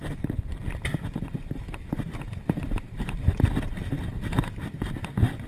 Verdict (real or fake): real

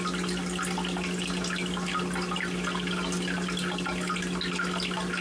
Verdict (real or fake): real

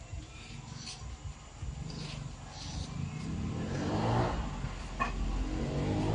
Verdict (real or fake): real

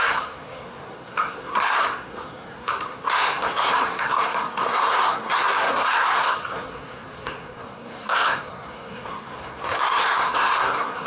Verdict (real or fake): fake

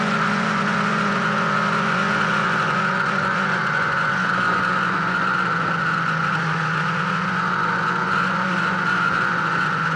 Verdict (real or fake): fake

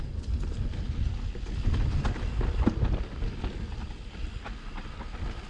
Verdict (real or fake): real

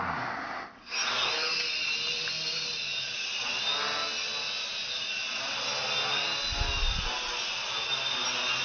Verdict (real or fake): real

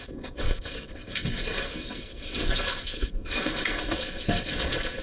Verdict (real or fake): fake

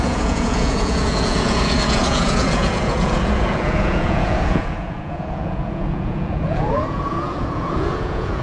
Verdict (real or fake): fake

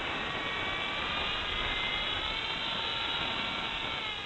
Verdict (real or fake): real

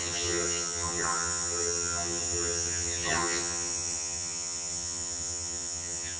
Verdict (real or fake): fake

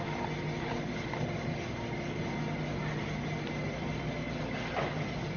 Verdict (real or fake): real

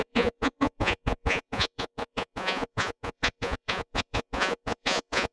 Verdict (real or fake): fake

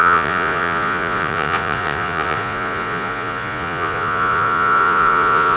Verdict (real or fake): fake